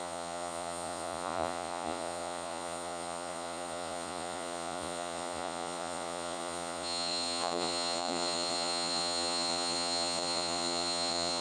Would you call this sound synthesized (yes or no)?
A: yes